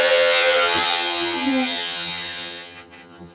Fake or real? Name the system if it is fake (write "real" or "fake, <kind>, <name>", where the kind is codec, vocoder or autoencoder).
fake, vocoder, HiFi-GAN